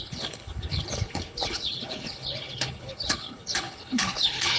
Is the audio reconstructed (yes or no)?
yes